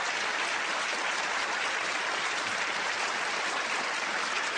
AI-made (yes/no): no